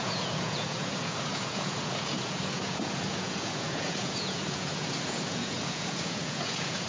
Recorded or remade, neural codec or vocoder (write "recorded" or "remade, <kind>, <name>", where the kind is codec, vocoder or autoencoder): remade, vocoder, Vocos